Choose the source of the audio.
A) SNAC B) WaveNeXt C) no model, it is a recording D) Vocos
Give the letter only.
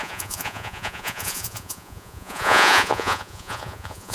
D